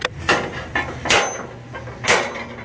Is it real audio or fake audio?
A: real